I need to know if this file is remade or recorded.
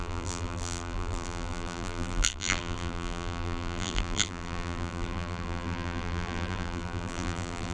remade